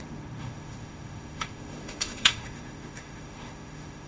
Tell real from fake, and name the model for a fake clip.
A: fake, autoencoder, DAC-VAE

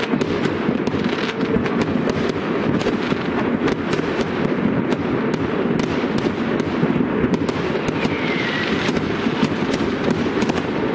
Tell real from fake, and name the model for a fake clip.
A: real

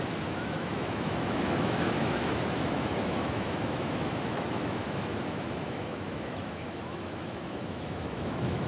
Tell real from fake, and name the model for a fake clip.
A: fake, autoencoder, DAC-VAE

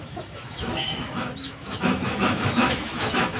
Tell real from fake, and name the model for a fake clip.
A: fake, autoencoder, DAC-VAE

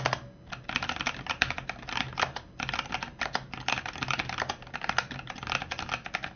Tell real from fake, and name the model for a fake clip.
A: real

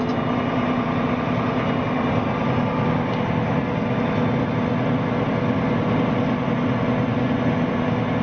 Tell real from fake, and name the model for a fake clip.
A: real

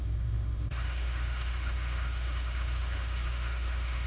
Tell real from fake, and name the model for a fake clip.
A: fake, autoencoder, DAC-VAE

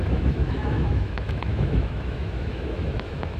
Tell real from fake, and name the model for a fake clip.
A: fake, autoencoder, DAC-VAE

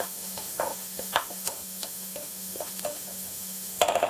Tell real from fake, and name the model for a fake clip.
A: fake, autoencoder, DAC-VAE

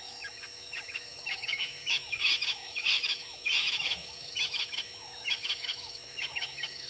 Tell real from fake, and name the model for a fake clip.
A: fake, autoencoder, DAC-VAE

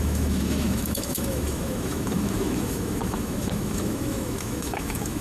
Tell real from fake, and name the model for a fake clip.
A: fake, autoencoder, DAC-VAE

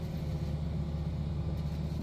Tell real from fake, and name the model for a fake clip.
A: real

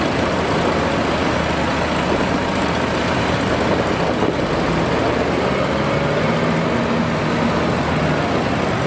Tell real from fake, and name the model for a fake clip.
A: real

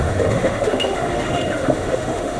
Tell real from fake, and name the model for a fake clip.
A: fake, autoencoder, DAC-VAE